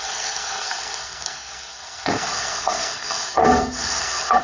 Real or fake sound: fake